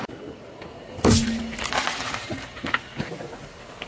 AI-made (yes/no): no